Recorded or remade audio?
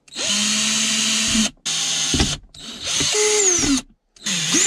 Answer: recorded